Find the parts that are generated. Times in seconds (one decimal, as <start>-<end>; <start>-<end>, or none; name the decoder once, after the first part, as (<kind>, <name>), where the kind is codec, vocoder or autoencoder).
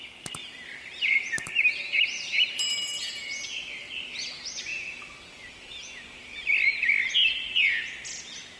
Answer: 0.4-2.7 (vocoder, BigVGAN v2)